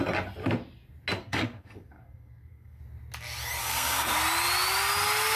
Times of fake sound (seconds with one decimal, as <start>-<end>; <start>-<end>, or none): 1.2-2.8; 3.6-4.1